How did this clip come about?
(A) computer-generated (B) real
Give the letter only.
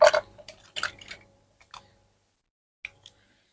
B